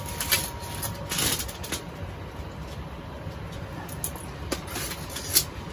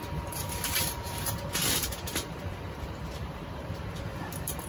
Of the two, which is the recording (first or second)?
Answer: first